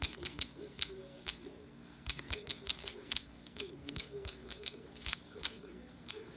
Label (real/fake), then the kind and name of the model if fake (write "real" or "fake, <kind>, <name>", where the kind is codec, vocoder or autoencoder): fake, codec, SNAC